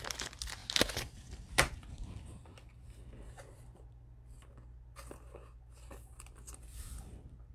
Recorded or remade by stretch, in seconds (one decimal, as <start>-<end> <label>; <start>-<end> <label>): 0.0-7.5 recorded